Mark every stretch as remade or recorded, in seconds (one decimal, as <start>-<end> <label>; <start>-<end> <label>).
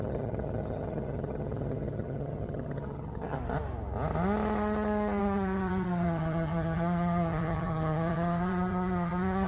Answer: 0.0-3.4 remade; 3.4-5.2 recorded; 5.2-9.5 remade